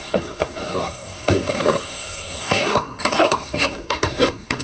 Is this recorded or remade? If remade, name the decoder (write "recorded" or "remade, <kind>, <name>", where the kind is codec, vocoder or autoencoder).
remade, codec, SNAC